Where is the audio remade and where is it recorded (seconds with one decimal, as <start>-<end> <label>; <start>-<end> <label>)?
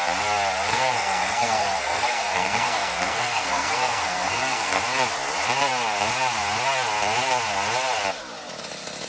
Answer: 0.0-0.7 recorded; 0.7-4.8 remade; 4.8-9.1 recorded